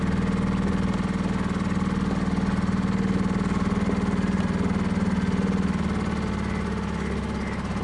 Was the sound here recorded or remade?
recorded